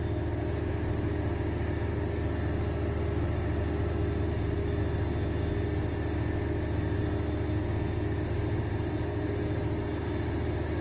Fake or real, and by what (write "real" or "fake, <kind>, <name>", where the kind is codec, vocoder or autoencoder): real